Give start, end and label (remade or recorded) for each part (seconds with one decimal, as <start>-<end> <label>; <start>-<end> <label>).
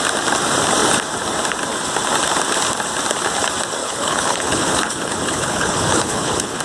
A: 0.0-3.8 recorded; 3.8-6.6 remade